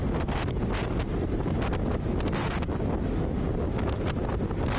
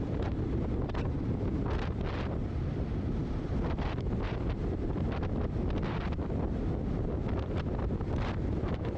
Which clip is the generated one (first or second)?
second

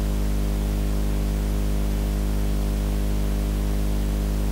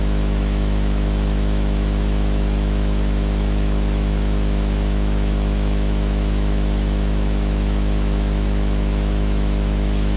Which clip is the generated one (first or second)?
second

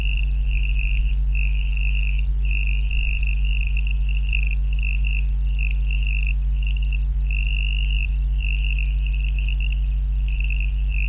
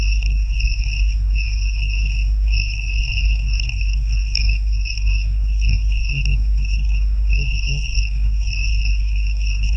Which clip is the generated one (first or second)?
second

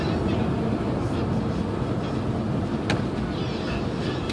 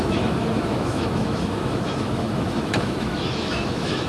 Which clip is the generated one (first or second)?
second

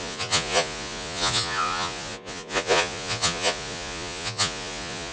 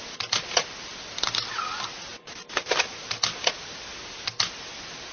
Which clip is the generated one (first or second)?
first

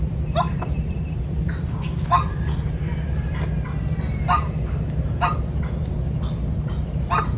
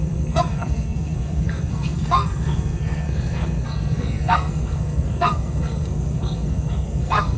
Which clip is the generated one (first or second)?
second